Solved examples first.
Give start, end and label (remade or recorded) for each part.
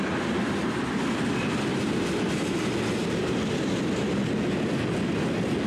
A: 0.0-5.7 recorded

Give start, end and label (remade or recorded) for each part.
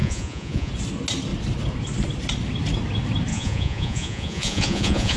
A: 0.0-0.7 remade; 0.7-3.3 recorded; 3.3-5.2 remade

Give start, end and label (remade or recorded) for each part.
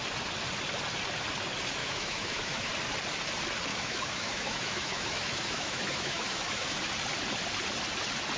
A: 0.0-1.8 recorded; 1.8-2.7 remade; 2.7-3.7 recorded; 3.7-6.8 remade; 6.8-8.4 recorded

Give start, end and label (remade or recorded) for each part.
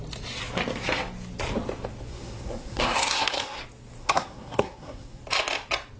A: 0.0-2.1 recorded; 2.1-3.6 remade; 3.6-4.0 recorded; 4.0-5.2 remade; 5.2-6.0 recorded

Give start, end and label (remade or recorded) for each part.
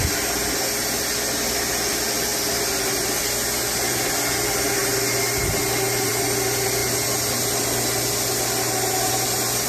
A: 0.0-9.7 recorded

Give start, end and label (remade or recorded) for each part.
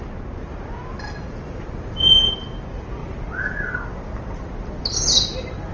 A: 0.0-5.7 recorded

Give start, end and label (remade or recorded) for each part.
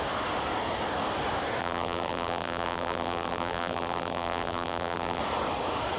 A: 0.0-1.6 recorded; 1.6-5.2 remade; 5.2-6.0 recorded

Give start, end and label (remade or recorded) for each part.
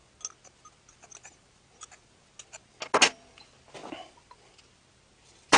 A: 0.0-3.4 recorded; 3.4-3.8 remade; 3.8-4.6 recorded; 4.6-5.6 remade